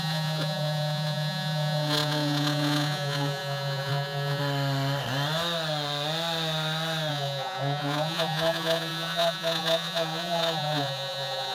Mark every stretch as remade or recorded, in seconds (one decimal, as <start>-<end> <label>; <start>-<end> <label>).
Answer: 0.0-4.4 remade; 4.4-7.1 recorded; 7.1-11.5 remade